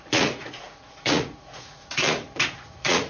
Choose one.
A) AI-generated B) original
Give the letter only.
A